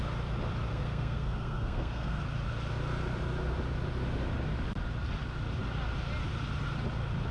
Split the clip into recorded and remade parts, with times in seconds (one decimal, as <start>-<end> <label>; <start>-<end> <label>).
0.0-0.7 recorded; 0.7-2.2 remade; 2.2-7.3 recorded